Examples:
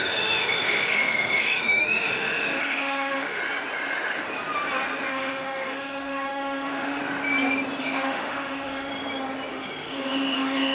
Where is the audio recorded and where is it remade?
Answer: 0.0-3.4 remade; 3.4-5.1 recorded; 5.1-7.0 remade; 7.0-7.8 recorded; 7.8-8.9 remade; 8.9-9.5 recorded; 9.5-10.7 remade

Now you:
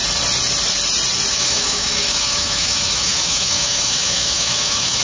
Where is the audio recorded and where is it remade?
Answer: 0.0-1.3 recorded; 1.3-5.0 remade

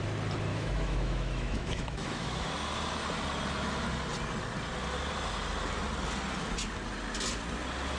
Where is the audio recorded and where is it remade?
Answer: 0.0-0.5 recorded; 0.5-2.5 remade; 2.5-8.0 recorded

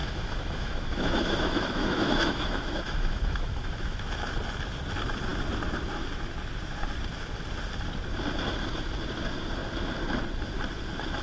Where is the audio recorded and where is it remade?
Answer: 0.0-4.0 remade; 4.0-11.2 recorded

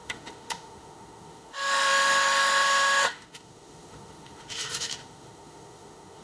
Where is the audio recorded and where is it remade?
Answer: 0.0-6.2 remade

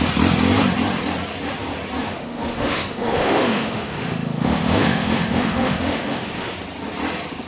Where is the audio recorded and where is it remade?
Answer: 0.0-2.0 recorded; 2.0-6.5 remade; 6.5-7.5 recorded

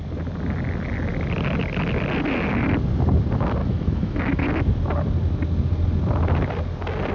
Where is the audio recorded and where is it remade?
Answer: 0.0-3.6 recorded; 3.6-4.4 remade; 4.4-7.1 recorded

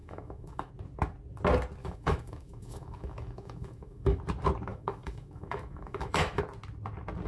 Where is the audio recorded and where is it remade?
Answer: 0.0-0.7 remade; 0.7-1.8 recorded; 1.8-4.2 remade; 4.2-4.7 recorded; 4.7-6.4 remade; 6.4-7.3 recorded